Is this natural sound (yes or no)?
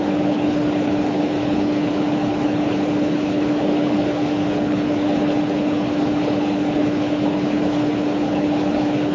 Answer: no